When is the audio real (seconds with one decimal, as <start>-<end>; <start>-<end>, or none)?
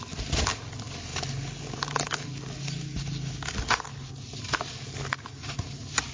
0.0-6.1